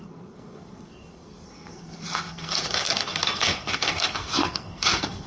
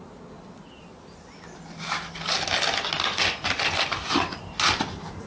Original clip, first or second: second